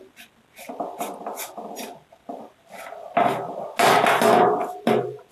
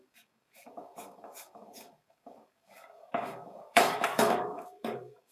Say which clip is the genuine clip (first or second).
first